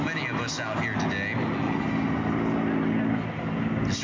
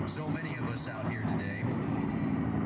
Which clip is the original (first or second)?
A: first